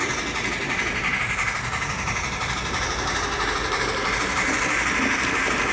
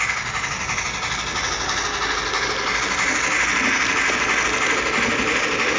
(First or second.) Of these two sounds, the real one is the second